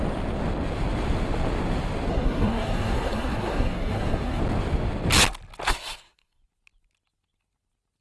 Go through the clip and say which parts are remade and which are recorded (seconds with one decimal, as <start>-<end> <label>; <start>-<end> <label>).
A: 0.0-2.1 recorded; 2.1-4.4 remade; 4.4-5.7 recorded; 5.7-6.4 remade; 6.4-8.0 recorded